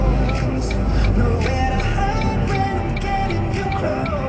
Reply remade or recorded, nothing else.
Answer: recorded